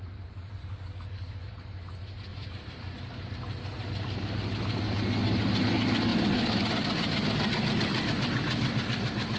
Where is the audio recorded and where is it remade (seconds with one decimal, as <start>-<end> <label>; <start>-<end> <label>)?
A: 0.0-0.6 recorded; 0.6-1.3 remade; 1.3-9.4 recorded